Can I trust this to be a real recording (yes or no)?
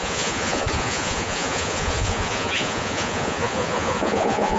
no